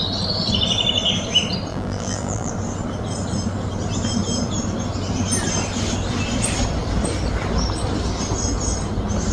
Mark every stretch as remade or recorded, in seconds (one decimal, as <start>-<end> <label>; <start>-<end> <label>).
0.0-1.7 recorded; 1.7-2.5 remade; 2.5-9.3 recorded